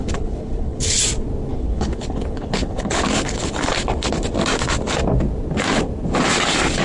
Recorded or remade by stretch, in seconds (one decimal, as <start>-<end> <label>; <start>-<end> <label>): 0.0-1.0 remade; 1.0-1.5 recorded; 1.5-3.6 remade; 3.6-6.8 recorded